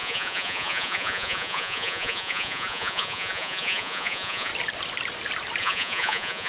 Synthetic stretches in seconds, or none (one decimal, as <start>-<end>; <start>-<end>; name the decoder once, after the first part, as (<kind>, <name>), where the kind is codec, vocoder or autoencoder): 0.0-4.5 (vocoder, Vocos); 5.6-6.5